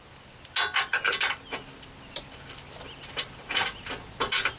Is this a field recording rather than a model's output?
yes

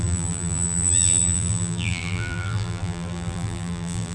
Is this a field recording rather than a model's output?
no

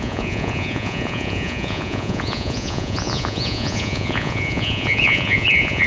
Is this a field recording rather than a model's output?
no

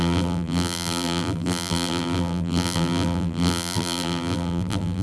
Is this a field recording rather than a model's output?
no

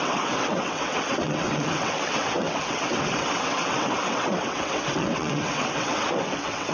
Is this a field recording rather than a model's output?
no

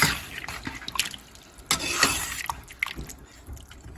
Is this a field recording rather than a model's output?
yes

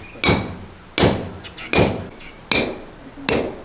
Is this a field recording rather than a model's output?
yes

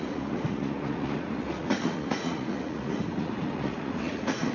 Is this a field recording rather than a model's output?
no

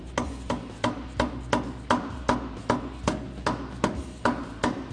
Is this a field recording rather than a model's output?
yes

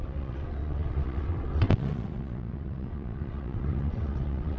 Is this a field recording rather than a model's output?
no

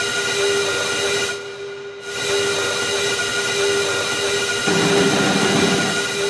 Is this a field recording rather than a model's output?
yes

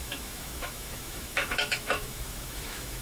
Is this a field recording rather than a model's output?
no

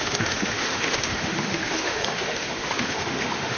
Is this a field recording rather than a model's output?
no